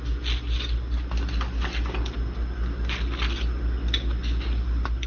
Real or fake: real